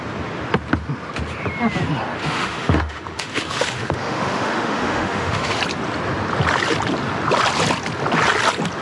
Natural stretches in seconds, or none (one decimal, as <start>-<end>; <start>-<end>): 0.0-2.2; 5.6-8.8